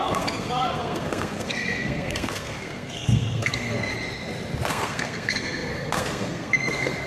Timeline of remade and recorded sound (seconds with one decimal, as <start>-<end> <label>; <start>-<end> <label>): 0.0-3.9 remade; 3.9-4.7 recorded; 4.7-7.1 remade